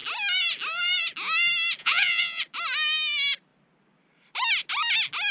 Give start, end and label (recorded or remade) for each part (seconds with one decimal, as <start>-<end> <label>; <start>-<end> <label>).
0.0-1.8 recorded; 1.8-2.4 remade; 2.4-5.3 recorded